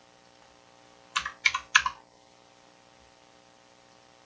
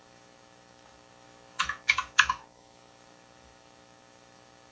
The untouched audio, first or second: first